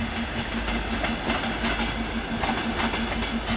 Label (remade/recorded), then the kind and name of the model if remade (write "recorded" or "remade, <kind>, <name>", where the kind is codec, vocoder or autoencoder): recorded